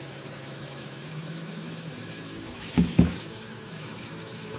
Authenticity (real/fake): fake